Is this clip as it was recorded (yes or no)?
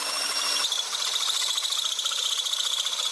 yes